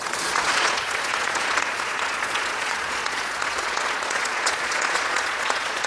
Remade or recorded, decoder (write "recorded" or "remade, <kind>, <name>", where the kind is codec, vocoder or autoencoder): remade, vocoder, Vocos